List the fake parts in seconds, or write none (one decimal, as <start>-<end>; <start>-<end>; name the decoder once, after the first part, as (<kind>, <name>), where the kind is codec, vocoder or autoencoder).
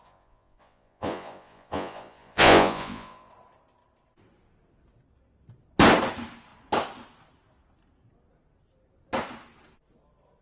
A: 0.0-3.3 (vocoder, Vocos)